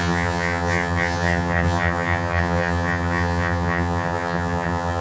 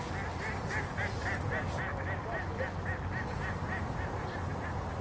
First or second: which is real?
second